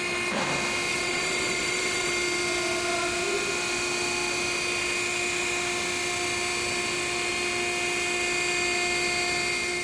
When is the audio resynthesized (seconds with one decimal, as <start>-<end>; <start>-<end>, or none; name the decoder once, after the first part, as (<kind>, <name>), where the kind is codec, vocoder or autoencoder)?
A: 0.9-2.1 (vocoder, WaveNeXt)

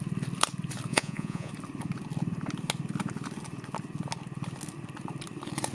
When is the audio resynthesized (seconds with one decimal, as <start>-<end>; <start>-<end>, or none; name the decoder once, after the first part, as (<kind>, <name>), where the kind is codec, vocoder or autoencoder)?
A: 0.9-1.5 (vocoder, Vocos)

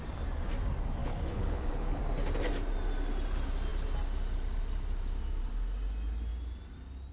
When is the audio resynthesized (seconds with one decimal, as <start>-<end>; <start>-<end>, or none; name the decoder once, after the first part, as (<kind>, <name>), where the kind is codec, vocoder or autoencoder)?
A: 1.0-2.0 (codec, HILCodec)

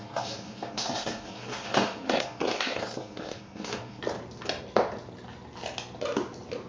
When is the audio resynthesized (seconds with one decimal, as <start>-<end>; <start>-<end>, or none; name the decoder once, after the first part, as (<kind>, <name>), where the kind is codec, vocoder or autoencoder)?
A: 0.0-4.0 (codec, SNAC)

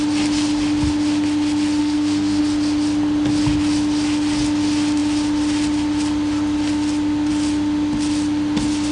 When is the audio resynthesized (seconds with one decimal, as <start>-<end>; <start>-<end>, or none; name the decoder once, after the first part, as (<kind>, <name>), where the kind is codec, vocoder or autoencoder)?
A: 1.8-2.4 (codec, SNAC)

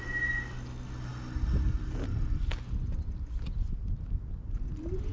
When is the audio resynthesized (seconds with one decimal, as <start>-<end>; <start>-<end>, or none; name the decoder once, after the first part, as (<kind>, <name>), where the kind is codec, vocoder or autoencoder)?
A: none

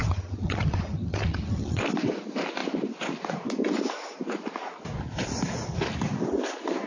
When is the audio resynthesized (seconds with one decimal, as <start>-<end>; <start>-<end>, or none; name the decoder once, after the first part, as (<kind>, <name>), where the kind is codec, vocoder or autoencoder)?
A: 0.0-1.8 (vocoder, HiFi-GAN)